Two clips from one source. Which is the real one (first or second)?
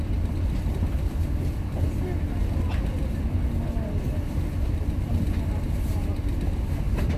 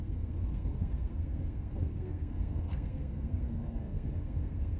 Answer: first